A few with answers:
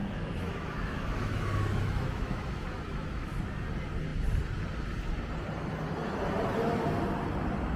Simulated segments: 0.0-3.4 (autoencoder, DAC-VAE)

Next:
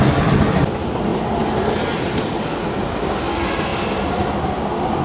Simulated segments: none

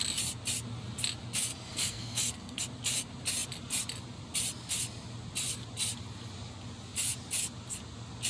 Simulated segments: 1.5-2.6 (codec, SNAC)